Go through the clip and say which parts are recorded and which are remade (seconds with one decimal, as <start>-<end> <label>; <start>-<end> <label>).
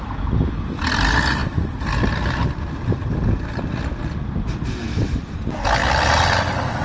0.0-6.8 recorded